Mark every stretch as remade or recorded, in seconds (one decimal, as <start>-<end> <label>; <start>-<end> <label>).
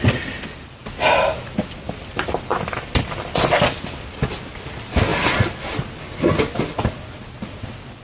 0.0-8.0 recorded